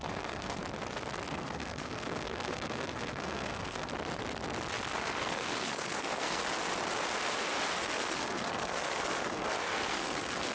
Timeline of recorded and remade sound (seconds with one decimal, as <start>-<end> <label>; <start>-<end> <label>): 0.0-0.6 remade; 0.6-1.3 recorded; 1.3-3.9 remade; 3.9-5.0 recorded; 5.0-6.4 remade; 6.4-7.8 recorded; 7.8-10.5 remade